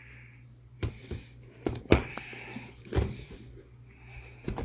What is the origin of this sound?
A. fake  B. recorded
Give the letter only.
B